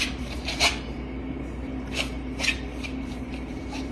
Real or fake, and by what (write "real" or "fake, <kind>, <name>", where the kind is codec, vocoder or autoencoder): fake, vocoder, BigVGAN v2